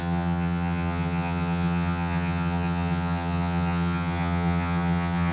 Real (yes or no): no